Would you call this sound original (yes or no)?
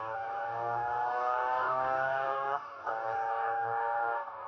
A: no